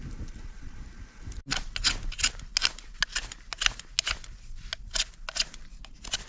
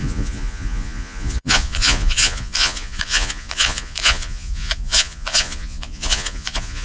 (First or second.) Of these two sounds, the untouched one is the first